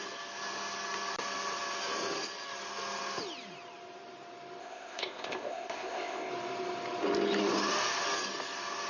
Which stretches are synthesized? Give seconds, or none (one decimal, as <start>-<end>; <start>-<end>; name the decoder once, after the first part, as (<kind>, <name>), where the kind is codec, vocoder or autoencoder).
4.6-6.3 (codec, ZipCodec)